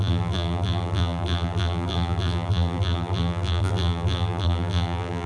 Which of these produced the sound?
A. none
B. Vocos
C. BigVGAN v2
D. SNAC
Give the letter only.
C